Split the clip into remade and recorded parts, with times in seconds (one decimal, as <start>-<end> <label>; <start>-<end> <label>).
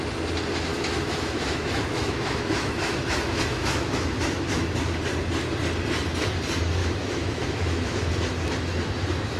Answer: 0.0-0.7 recorded; 0.7-4.7 remade; 4.7-6.8 recorded; 6.8-8.1 remade; 8.1-9.4 recorded